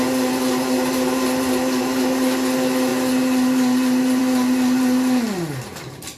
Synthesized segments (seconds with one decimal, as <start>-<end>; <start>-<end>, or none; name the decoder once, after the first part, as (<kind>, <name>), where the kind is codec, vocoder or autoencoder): none